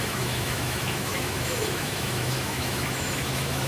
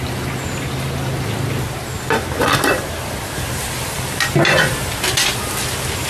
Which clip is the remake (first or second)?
first